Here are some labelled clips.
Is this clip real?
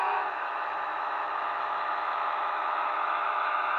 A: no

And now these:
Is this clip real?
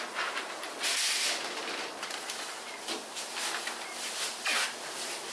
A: yes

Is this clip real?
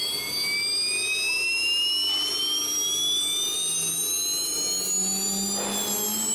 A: yes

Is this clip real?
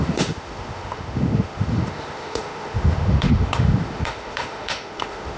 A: no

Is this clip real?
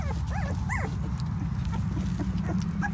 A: yes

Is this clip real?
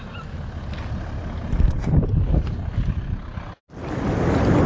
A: yes